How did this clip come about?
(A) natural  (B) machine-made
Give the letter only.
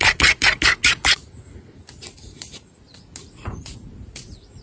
B